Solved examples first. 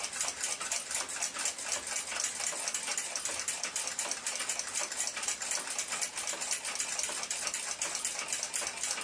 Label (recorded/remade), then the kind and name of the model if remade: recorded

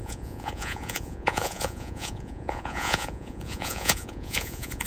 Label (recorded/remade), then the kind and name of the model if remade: remade, vocoder, Vocos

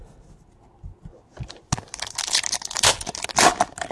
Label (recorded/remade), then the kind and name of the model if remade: recorded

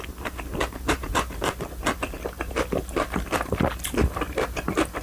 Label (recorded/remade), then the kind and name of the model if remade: recorded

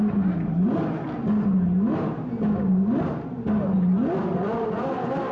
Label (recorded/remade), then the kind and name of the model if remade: recorded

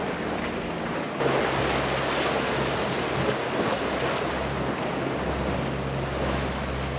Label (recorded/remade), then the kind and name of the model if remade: recorded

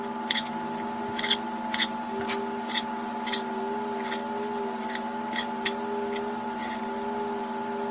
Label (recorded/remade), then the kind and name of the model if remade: recorded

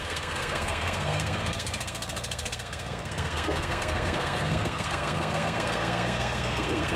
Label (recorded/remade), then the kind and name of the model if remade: remade, codec, SNAC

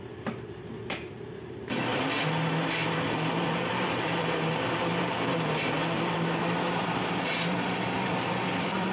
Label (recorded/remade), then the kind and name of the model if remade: remade, vocoder, BigVGAN v2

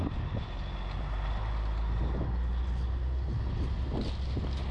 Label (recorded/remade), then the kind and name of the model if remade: recorded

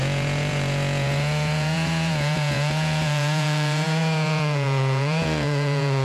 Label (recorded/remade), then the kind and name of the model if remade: remade, vocoder, Vocos